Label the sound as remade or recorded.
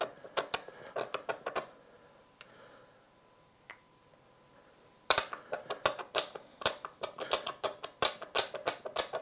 recorded